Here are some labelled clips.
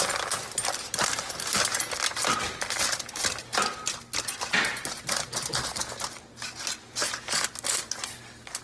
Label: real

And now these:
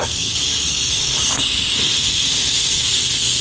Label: fake